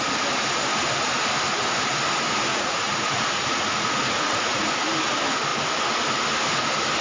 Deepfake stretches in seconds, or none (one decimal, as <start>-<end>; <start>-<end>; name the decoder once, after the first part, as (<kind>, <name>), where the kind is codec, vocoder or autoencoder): 2.5-4.7 (vocoder, Vocos)